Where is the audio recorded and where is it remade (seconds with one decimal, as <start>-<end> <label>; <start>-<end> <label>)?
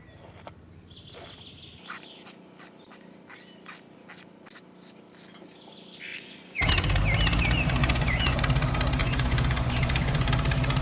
0.0-6.1 recorded; 6.1-6.7 remade; 6.7-7.8 recorded; 7.8-8.4 remade; 8.4-9.0 recorded; 9.0-10.3 remade; 10.3-10.8 recorded